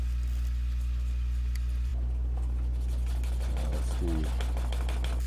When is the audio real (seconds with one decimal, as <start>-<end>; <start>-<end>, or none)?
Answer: 0.0-5.3